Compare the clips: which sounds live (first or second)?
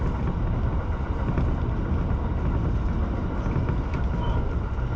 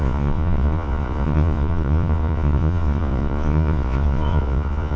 first